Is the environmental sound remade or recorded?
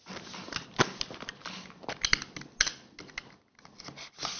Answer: recorded